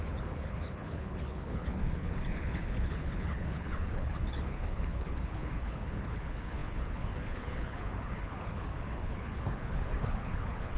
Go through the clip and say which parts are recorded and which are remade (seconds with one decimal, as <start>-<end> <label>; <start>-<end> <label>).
0.0-10.8 remade